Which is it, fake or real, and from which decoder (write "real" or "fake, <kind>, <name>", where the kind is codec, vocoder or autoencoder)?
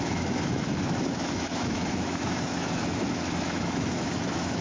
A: fake, autoencoder, DAC-VAE